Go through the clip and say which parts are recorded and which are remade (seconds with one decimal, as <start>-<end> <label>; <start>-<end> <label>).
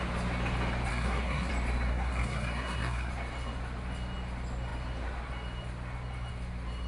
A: 0.0-0.9 recorded; 0.9-1.5 remade; 1.5-1.9 recorded; 1.9-3.1 remade; 3.1-6.9 recorded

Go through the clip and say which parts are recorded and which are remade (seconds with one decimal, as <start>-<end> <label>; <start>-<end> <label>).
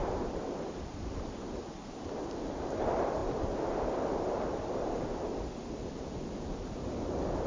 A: 0.0-7.5 recorded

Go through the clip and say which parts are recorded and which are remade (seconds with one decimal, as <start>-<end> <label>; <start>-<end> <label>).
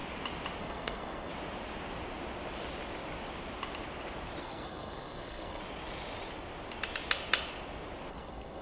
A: 0.0-0.6 recorded; 0.6-1.3 remade; 1.3-4.4 recorded; 4.4-5.6 remade; 5.6-8.1 recorded; 8.1-8.6 remade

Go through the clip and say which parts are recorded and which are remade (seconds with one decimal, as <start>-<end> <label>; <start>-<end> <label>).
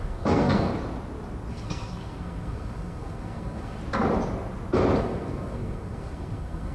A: 0.0-0.7 remade; 0.7-1.5 recorded; 1.5-3.8 remade; 3.8-5.0 recorded; 5.0-6.7 remade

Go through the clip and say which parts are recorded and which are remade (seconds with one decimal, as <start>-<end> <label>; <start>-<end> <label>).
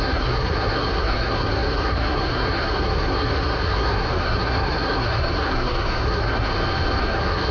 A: 0.0-6.5 remade; 6.5-7.0 recorded; 7.0-7.5 remade